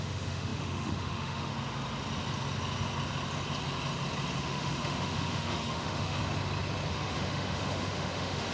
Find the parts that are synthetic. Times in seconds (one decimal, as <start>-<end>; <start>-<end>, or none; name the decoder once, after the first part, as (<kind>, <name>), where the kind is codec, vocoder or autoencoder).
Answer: 0.0-1.5 (autoencoder, DAC-VAE); 4.4-6.2; 6.9-8.5